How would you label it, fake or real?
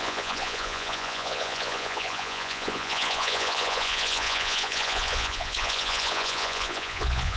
fake